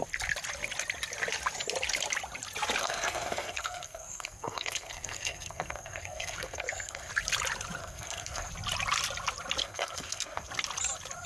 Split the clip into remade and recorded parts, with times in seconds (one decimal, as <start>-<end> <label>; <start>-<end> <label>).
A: 0.0-2.8 recorded; 2.8-7.1 remade; 7.1-7.8 recorded; 7.8-8.5 remade; 8.5-9.6 recorded; 9.6-10.5 remade; 10.5-11.3 recorded